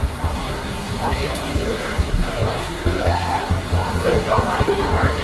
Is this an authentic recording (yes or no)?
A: no